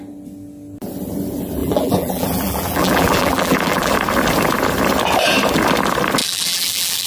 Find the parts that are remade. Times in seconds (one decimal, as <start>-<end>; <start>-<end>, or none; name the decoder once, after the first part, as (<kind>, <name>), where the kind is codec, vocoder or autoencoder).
1.6-3.9 (vocoder, BigVGAN v2); 6.2-7.1